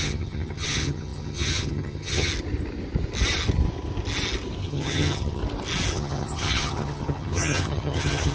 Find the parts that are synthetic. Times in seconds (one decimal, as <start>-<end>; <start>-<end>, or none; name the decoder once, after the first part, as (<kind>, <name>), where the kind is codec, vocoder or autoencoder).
0.0-2.3 (vocoder, HiFi-GAN); 4.6-5.4; 5.9-8.3